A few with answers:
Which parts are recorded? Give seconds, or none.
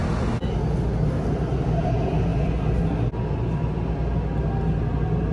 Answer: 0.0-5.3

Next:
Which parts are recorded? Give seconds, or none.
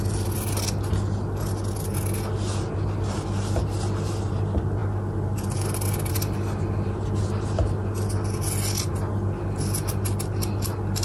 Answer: 0.0-11.0